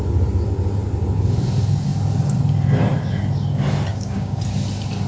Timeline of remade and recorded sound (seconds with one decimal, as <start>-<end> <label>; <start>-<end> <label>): 0.0-3.9 recorded; 3.9-4.4 remade; 4.4-5.1 recorded